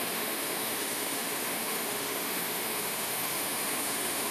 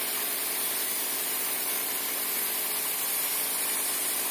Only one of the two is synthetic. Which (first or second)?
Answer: first